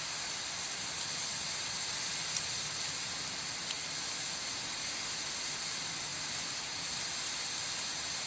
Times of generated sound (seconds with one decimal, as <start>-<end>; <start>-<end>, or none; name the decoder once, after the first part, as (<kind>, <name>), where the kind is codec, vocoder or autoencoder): none